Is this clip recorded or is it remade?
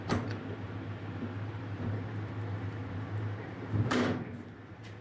remade